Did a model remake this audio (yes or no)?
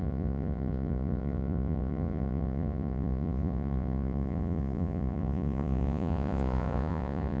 yes